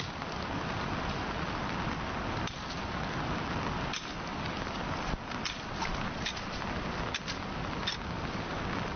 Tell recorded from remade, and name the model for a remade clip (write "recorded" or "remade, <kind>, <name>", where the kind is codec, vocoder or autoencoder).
recorded